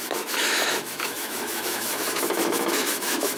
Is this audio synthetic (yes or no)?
yes